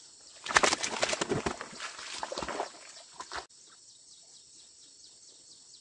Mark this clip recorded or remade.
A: recorded